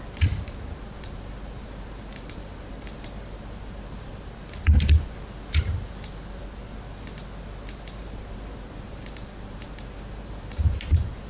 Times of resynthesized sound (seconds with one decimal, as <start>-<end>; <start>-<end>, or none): 0.0-4.1; 8.0-11.3